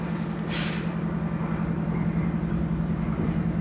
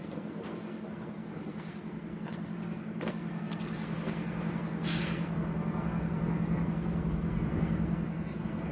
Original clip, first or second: first